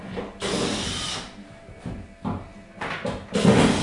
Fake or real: real